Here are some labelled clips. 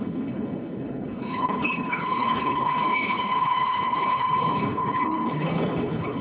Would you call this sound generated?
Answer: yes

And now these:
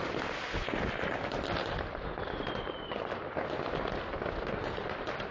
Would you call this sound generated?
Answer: no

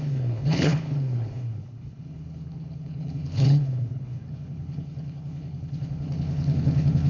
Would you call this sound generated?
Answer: yes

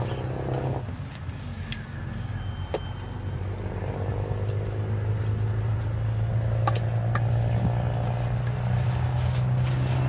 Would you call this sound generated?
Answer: no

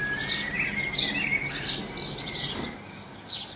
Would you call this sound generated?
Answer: no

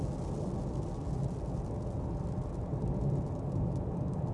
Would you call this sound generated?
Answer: no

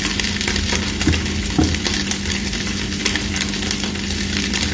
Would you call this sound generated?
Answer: no